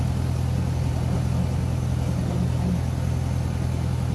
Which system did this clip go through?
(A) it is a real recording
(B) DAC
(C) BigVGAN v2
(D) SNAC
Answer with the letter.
A